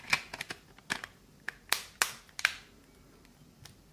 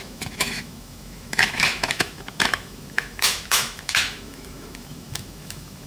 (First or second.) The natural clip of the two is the first